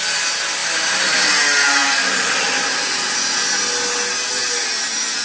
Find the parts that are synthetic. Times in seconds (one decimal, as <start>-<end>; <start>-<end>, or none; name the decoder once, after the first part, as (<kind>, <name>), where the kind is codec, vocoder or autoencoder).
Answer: none